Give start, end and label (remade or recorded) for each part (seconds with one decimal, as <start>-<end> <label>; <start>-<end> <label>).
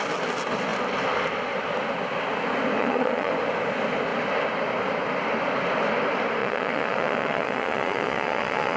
0.0-2.8 recorded; 2.8-3.3 remade; 3.3-6.4 recorded; 6.4-8.8 remade